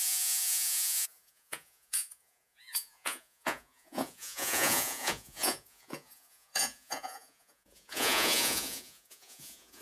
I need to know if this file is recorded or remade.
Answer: remade